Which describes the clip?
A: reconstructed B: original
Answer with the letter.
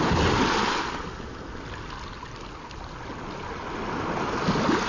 B